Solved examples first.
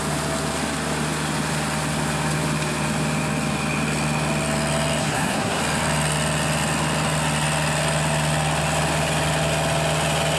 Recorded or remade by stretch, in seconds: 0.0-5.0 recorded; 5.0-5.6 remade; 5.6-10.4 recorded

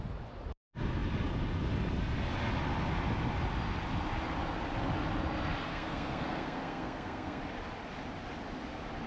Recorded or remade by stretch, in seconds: 0.0-5.7 recorded; 5.7-7.4 remade; 7.4-9.1 recorded

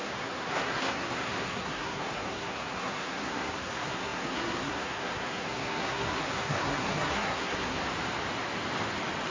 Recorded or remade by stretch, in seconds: 0.0-7.8 remade; 7.8-9.3 recorded

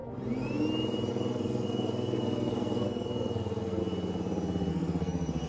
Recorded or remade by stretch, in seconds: 0.0-1.1 recorded; 1.1-3.8 remade; 3.8-4.7 recorded; 4.7-5.5 remade

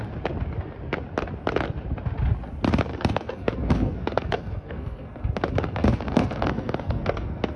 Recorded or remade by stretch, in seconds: 0.0-2.9 recorded; 2.9-7.6 remade